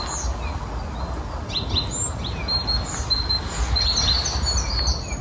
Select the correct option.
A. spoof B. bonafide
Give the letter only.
B